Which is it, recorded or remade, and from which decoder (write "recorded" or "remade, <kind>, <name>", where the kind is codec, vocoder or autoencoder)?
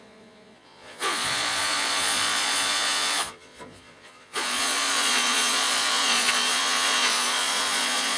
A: remade, vocoder, Vocos